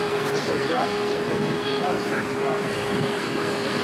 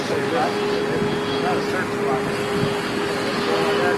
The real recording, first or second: second